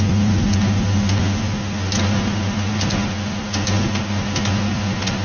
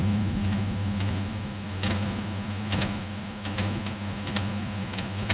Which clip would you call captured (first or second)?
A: first